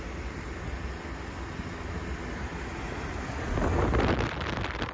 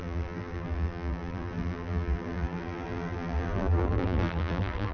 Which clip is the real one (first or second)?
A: first